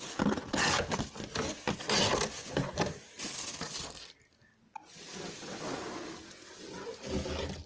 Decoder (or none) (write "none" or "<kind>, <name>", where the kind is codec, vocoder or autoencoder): none